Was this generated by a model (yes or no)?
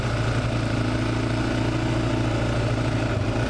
no